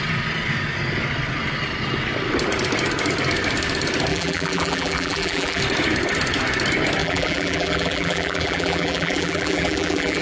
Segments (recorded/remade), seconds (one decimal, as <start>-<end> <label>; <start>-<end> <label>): 0.0-4.1 recorded; 4.1-5.6 remade; 5.6-7.0 recorded; 7.0-10.2 remade